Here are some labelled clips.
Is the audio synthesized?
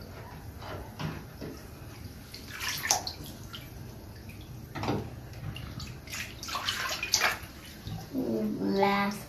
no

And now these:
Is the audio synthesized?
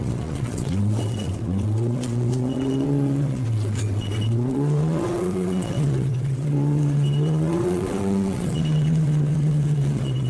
yes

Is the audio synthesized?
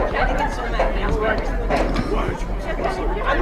no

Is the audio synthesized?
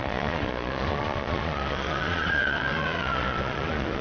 yes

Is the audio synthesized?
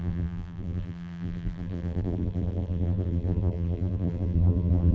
yes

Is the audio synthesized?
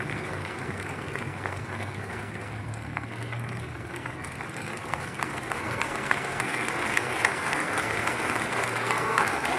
yes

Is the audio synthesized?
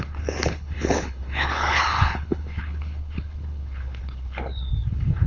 yes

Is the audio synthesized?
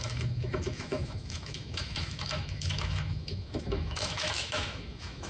yes